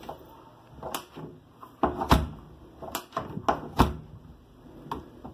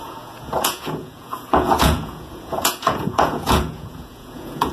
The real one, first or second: first